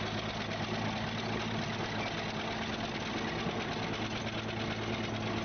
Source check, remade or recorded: recorded